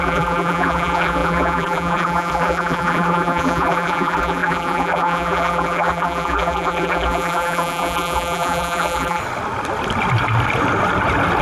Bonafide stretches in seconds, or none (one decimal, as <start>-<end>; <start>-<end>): 9.2-11.4